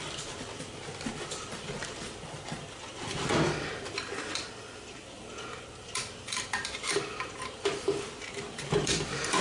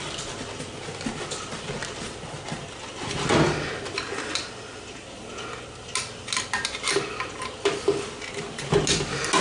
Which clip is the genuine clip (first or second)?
second